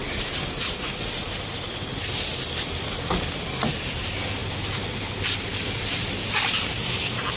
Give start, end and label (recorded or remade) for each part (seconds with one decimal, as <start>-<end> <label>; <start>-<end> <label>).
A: 0.0-7.4 recorded